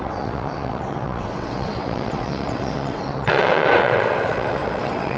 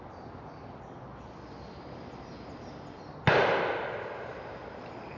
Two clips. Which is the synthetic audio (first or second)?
first